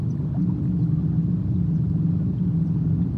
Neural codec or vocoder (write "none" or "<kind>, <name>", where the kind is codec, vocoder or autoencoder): none